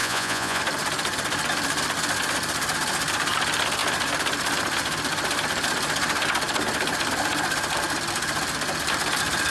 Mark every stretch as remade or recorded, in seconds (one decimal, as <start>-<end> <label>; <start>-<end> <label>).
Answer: 0.0-0.6 remade; 0.6-9.5 recorded